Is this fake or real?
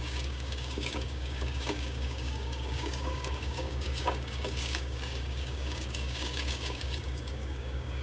fake